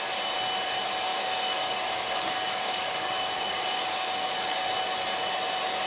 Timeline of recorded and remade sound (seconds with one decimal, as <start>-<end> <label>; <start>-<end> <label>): 0.0-1.1 recorded; 1.1-4.6 remade; 4.6-5.9 recorded